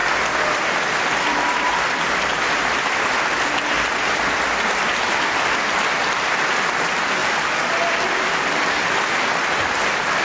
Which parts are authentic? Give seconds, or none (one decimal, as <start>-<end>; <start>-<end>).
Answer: 3.1-10.2